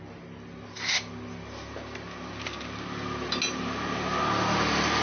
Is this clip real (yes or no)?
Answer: yes